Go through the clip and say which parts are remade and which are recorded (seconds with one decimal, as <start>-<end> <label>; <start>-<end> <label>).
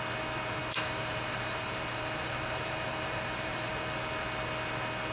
0.0-0.6 recorded; 0.6-3.7 remade; 3.7-5.1 recorded